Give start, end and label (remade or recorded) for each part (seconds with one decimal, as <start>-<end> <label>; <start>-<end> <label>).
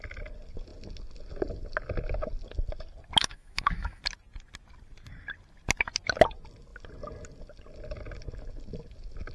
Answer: 0.0-3.2 recorded; 3.2-4.0 remade; 4.0-9.3 recorded